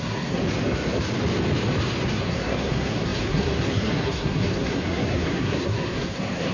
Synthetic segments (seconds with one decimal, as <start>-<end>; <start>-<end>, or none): 0.0-0.4; 2.2-6.5